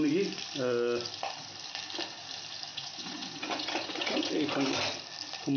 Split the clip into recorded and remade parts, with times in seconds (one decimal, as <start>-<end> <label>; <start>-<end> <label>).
0.0-2.7 recorded; 2.7-4.3 remade; 4.3-5.6 recorded